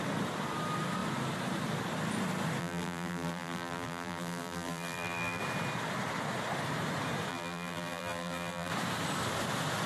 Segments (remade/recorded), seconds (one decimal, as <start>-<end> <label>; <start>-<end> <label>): 0.0-2.6 recorded; 2.6-5.4 remade; 5.4-7.3 recorded; 7.3-8.7 remade; 8.7-9.9 recorded